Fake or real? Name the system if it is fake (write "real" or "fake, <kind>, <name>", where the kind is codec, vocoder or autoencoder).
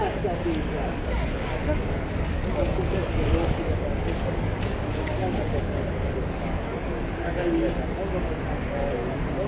fake, codec, DAC